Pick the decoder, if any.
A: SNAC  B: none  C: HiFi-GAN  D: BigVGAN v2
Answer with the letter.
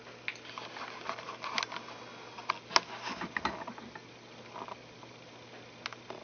B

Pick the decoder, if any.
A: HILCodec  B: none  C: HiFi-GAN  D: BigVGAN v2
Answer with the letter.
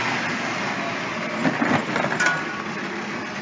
B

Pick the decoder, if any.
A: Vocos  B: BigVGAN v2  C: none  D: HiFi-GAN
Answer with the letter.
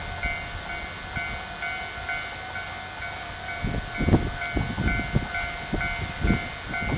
C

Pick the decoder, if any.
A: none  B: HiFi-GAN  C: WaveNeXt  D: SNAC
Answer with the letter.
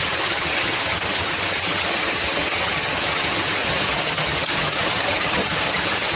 B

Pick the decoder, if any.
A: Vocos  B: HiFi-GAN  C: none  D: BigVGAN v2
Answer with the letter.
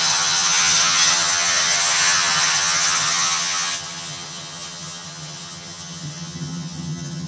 B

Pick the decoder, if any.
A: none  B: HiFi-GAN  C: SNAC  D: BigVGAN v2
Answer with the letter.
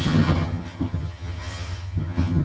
B